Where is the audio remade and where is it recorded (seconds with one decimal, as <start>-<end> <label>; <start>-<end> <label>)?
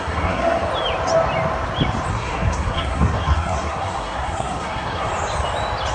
0.0-0.7 remade; 0.7-2.1 recorded; 2.1-5.1 remade; 5.1-5.9 recorded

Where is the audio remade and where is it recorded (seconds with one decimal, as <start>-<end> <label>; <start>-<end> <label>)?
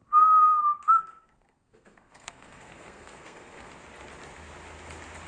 0.0-0.5 recorded; 0.5-3.7 remade; 3.7-5.3 recorded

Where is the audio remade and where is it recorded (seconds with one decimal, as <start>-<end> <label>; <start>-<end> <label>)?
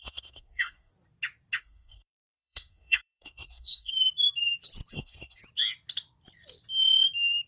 0.0-0.9 remade; 0.9-1.6 recorded; 1.6-3.9 remade; 3.9-4.9 recorded; 4.9-5.4 remade; 5.4-7.5 recorded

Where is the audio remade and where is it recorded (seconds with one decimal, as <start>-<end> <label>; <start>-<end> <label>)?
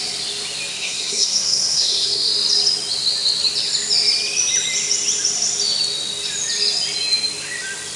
0.0-0.7 recorded; 0.7-2.3 remade; 2.3-8.0 recorded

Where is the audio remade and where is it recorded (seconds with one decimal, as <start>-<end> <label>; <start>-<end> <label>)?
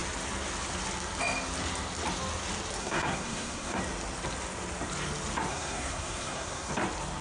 0.0-2.8 recorded; 2.8-3.8 remade; 3.8-5.5 recorded; 5.5-6.7 remade; 6.7-7.2 recorded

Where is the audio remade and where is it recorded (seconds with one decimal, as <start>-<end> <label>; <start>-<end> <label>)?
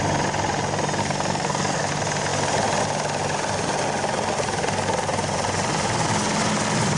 0.0-1.0 recorded; 1.0-1.9 remade; 1.9-7.0 recorded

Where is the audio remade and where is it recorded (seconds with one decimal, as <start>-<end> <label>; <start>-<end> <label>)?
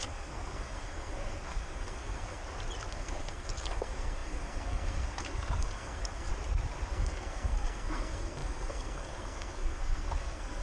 0.0-2.4 remade; 2.4-2.9 recorded; 2.9-6.3 remade; 6.3-6.9 recorded; 6.9-10.6 remade